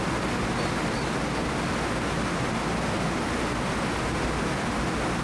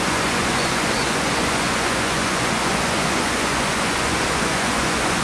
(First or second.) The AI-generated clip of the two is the second